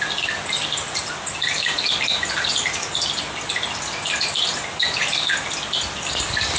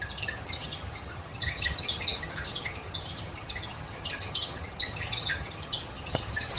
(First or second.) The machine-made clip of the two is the second